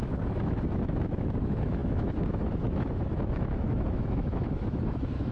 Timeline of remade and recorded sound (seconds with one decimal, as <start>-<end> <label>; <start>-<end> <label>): 0.0-5.3 remade